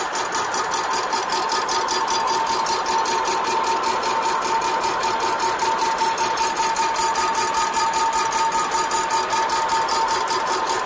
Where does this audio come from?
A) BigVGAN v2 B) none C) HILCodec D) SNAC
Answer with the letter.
B